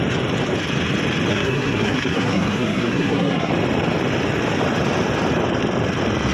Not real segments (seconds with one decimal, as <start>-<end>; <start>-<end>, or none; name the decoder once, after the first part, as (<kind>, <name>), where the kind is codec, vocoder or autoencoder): 1.3-3.5 (codec, SNAC)

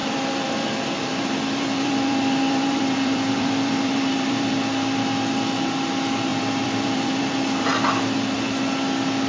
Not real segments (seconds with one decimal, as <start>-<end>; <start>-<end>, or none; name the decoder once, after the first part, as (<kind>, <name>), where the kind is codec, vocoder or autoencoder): 0.0-4.5 (vocoder, BigVGAN v2); 6.3-7.3

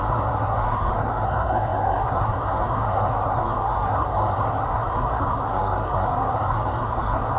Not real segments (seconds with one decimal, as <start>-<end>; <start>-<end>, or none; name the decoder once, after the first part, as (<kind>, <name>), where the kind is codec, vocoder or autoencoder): 0.0-7.4 (codec, SNAC)

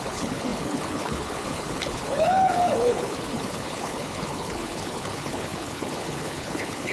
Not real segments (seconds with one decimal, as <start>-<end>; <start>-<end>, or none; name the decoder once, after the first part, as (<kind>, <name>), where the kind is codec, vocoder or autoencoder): 0.0-6.9 (codec, HILCodec)